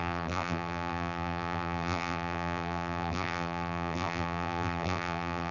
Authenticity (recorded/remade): remade